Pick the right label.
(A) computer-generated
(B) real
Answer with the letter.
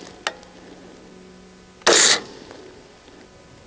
B